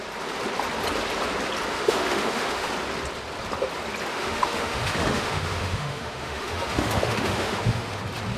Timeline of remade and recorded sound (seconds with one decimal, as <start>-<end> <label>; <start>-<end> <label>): 0.0-1.7 recorded; 1.7-2.7 remade; 2.7-4.1 recorded; 4.1-8.0 remade; 8.0-8.4 recorded